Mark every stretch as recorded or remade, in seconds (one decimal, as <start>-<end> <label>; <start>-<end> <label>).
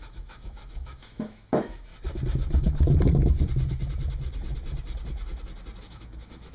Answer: 0.0-1.9 remade; 1.9-5.8 recorded; 5.8-6.5 remade